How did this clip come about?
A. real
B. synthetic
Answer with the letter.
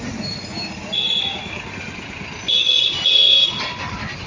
A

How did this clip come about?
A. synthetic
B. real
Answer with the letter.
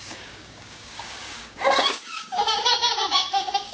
A